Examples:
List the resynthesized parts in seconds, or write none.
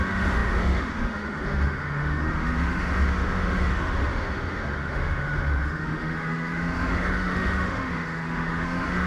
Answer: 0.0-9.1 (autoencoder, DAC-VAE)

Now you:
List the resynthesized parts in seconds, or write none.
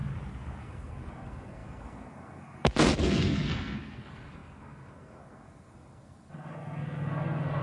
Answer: 0.6-7.6 (codec, SNAC)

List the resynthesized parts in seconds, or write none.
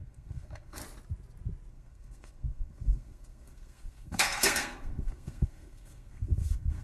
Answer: 0.0-0.8 (codec, SNAC); 1.7-6.8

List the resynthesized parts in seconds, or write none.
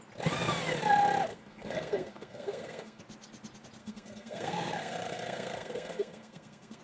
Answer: 1.3-3.0 (codec, SNAC); 3.8-6.8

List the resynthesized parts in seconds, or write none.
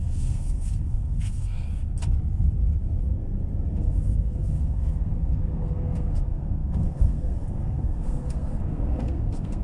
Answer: 0.0-1.9 (codec, SNAC); 3.7-9.6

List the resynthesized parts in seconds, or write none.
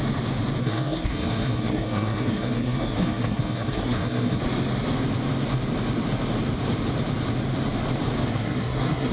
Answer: 0.6-4.4 (codec, SNAC); 8.3-9.1